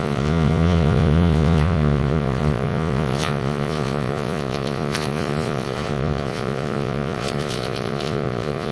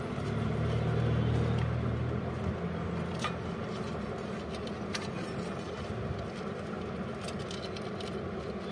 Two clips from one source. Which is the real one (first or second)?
second